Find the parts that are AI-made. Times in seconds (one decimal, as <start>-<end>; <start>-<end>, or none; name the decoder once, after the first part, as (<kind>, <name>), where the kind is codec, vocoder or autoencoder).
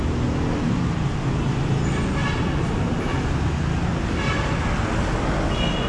2.2-2.7 (vocoder, BigVGAN v2)